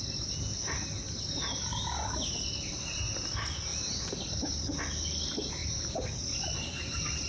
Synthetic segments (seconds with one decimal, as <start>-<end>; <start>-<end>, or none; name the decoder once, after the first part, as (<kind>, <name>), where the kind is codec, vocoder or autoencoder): none